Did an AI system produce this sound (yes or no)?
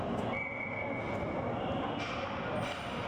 no